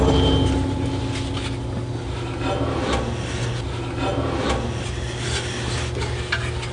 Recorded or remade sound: recorded